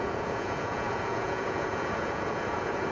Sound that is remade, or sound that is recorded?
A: remade